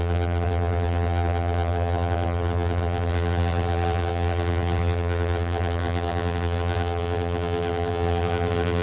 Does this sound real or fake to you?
fake